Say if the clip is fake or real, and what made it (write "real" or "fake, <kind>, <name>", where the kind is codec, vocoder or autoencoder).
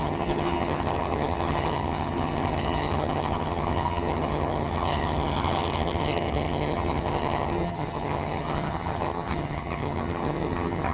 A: fake, vocoder, HiFi-GAN